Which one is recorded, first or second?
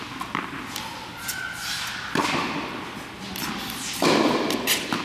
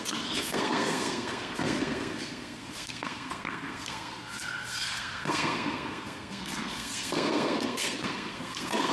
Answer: first